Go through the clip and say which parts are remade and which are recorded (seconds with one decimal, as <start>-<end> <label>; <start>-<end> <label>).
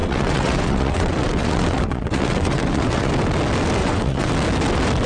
0.0-3.1 remade; 3.1-3.8 recorded; 3.8-4.3 remade; 4.3-5.1 recorded